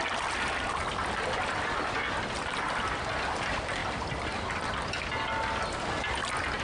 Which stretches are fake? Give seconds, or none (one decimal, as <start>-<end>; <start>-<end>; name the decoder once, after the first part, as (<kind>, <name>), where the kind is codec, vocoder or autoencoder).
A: none